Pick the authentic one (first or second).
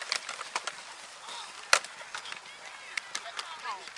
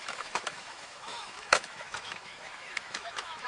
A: first